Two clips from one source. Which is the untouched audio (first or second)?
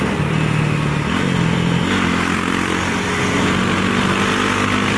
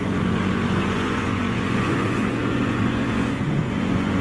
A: first